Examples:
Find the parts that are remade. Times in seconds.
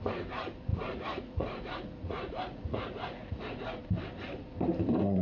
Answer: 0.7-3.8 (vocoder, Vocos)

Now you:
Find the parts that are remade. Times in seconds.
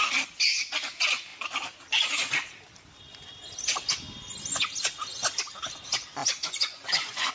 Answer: 6.2-7.3 (vocoder, Vocos)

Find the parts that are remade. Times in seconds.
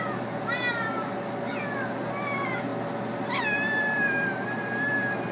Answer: none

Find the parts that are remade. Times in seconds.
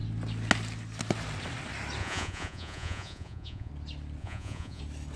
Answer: 2.0-3.7 (vocoder, Vocos); 4.2-4.8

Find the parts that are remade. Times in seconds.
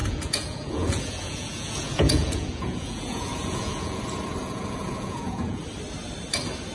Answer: 0.0-4.0 (vocoder, Vocos); 4.4-5.6